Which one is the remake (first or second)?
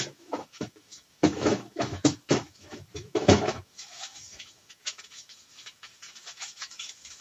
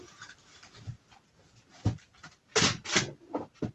first